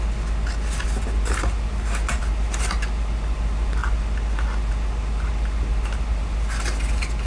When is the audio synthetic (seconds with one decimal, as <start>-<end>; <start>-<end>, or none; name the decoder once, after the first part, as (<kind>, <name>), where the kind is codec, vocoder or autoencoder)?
none